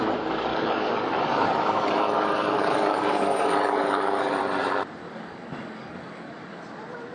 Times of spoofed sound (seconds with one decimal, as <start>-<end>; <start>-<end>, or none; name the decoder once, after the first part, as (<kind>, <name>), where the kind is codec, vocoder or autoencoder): 0.5-4.4 (codec, DAC); 5.0-6.6